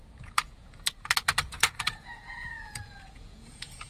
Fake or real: fake